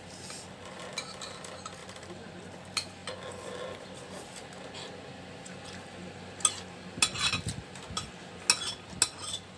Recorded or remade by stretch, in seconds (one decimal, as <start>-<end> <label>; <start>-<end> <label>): 0.0-1.8 recorded; 1.8-2.4 remade; 2.4-9.6 recorded